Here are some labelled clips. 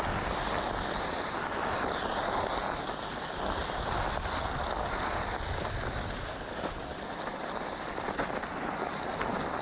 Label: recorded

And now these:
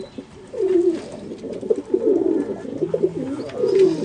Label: recorded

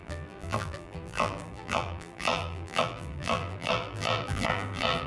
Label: remade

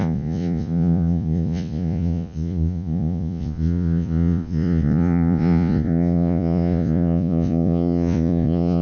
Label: remade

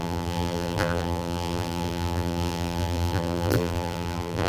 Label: remade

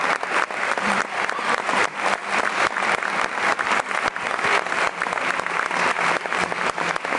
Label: recorded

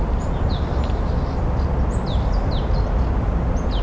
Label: recorded